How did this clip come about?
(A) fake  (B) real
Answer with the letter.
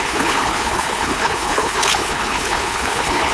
A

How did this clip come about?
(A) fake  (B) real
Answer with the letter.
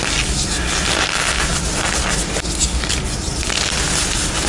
B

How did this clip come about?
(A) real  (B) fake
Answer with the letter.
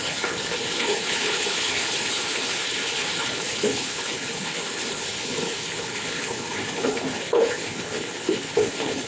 B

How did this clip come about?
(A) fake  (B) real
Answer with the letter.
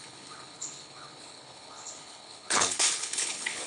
A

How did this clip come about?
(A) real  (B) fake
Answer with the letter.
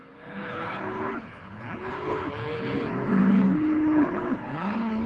B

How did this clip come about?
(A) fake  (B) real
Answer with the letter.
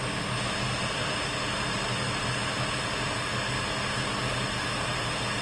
B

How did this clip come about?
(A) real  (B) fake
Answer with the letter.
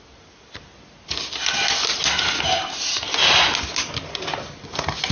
A